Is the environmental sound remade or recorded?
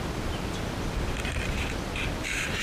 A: recorded